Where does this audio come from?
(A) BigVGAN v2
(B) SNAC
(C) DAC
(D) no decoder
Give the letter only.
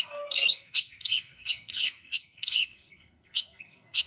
B